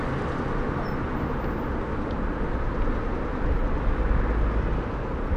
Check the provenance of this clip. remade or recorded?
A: recorded